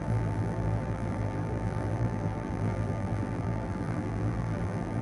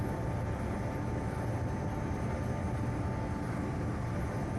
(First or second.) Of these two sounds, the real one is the second